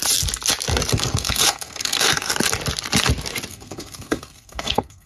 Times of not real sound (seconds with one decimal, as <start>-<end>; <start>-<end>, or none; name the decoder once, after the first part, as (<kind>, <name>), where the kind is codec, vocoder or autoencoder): 0.9-2.3 (codec, SNAC); 3.5-5.1